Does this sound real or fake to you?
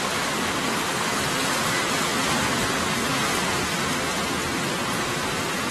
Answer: real